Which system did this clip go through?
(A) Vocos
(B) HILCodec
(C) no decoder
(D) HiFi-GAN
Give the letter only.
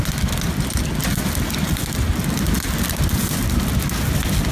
C